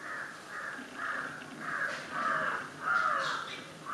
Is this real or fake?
real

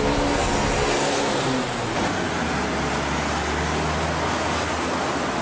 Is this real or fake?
real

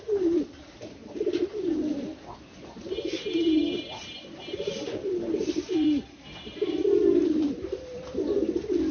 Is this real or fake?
fake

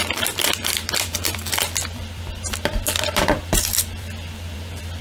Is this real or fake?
fake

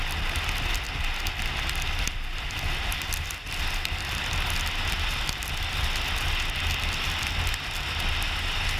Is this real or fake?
real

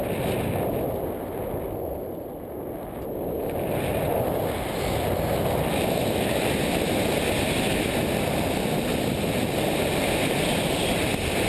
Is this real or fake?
real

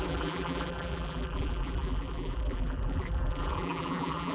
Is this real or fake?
fake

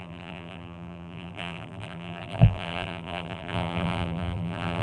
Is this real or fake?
fake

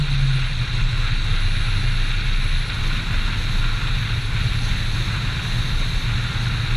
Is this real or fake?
real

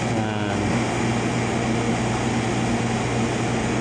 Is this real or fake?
real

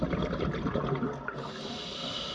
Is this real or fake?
real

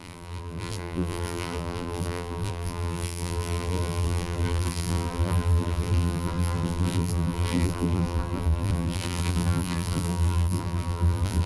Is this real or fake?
fake